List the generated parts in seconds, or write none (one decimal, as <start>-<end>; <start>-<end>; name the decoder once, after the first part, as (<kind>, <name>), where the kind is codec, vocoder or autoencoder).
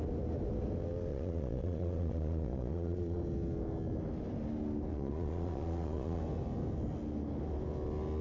1.1-3.2 (vocoder, Vocos); 4.9-6.2